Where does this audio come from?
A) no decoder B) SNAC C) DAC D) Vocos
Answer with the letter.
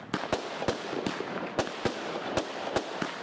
A